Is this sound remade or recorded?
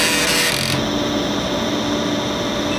recorded